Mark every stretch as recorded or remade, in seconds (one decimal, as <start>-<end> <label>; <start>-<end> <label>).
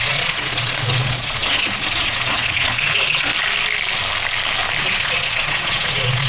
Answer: 0.0-3.3 remade; 3.3-4.8 recorded; 4.8-6.3 remade